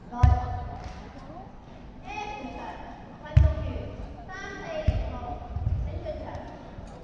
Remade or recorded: recorded